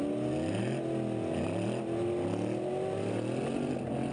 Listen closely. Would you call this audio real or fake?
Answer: real